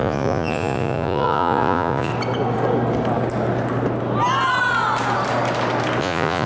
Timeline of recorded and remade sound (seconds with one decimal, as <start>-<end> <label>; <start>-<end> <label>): 0.0-2.1 remade; 2.1-6.0 recorded; 6.0-6.5 remade